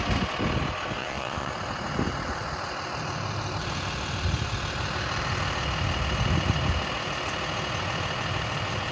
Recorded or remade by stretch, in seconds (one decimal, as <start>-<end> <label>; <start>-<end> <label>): 0.0-1.0 recorded; 1.0-1.5 remade; 1.5-8.9 recorded